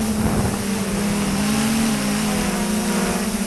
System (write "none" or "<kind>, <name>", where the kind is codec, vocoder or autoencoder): none